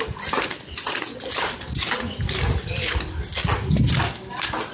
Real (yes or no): yes